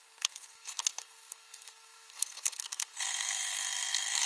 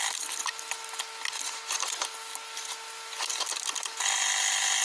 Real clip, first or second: second